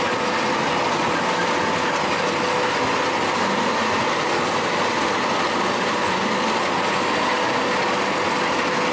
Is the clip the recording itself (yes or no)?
yes